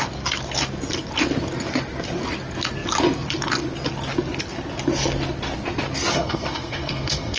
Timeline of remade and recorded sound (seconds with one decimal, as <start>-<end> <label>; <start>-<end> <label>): 0.0-6.1 recorded; 6.1-7.4 remade